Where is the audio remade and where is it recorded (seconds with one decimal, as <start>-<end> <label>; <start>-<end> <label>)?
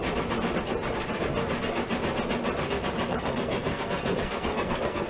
0.0-3.1 recorded; 3.1-5.1 remade